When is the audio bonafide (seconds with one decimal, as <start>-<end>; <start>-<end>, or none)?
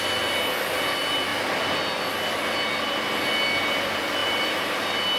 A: 0.0-4.2; 4.8-5.2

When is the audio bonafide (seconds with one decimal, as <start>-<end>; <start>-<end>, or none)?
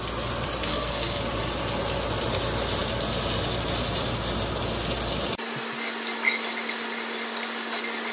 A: 0.0-0.7; 1.2-8.1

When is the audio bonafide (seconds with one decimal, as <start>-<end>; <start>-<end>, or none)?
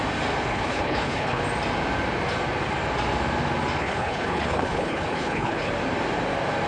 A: 0.0-0.5; 1.4-3.8; 5.7-6.7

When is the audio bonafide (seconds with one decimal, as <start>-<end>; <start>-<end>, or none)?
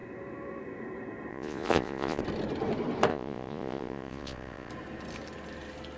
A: 0.0-1.3; 2.2-3.1; 4.7-6.0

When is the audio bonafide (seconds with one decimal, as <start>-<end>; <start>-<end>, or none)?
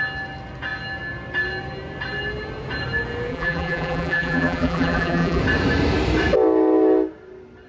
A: 0.0-3.3; 5.4-7.7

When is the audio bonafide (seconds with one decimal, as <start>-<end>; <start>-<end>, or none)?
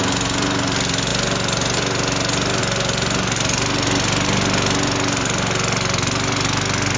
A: 0.0-7.0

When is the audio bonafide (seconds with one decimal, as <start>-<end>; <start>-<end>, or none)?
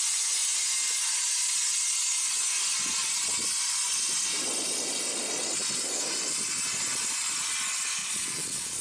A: 0.0-8.0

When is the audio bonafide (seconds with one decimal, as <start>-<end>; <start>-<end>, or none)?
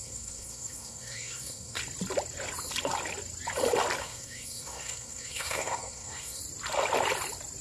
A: 1.8-4.0; 6.4-7.6